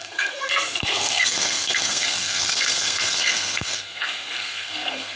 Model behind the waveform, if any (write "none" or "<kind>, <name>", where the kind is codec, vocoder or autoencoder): codec, SNAC